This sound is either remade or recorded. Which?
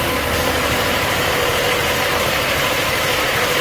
remade